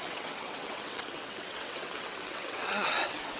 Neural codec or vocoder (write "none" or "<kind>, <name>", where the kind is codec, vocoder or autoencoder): vocoder, WaveNeXt